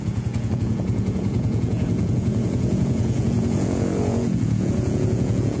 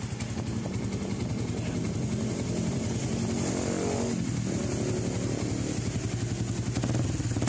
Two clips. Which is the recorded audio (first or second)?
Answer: second